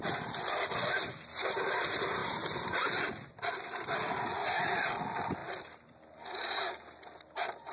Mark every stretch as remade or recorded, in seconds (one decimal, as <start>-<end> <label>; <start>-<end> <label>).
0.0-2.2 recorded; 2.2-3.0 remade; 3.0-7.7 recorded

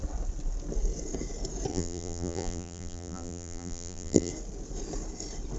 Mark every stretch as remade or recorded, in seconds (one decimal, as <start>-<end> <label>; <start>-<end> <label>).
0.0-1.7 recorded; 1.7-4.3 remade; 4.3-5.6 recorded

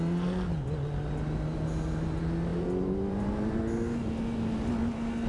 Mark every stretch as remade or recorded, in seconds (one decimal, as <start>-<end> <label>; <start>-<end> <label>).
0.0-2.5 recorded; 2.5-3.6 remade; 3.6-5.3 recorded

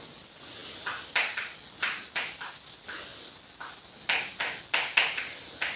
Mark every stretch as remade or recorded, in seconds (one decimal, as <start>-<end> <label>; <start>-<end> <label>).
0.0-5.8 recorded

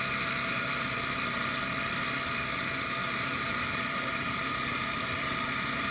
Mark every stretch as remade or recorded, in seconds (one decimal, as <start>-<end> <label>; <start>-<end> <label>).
0.0-3.0 recorded; 3.0-5.9 remade

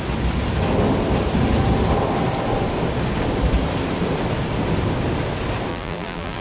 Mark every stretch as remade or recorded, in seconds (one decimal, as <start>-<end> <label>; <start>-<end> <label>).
0.0-5.7 recorded; 5.7-6.4 remade

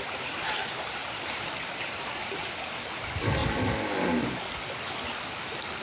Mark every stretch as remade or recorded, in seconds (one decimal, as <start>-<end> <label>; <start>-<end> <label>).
0.0-1.0 recorded; 1.0-2.0 remade; 2.0-5.8 recorded